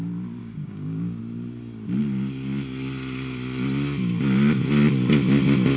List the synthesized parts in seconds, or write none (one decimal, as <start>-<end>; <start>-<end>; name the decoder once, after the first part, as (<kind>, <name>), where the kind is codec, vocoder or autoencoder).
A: 0.4-1.2 (codec, DAC)